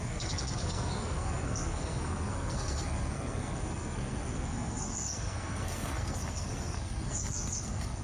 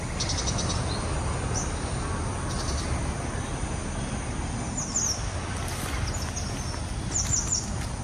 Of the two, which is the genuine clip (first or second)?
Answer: second